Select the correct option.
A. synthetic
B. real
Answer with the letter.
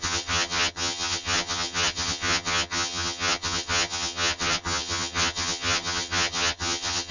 A